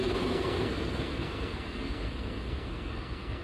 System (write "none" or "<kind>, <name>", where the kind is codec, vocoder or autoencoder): codec, SNAC